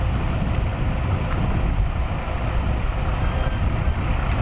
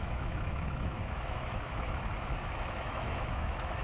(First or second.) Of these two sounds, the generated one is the second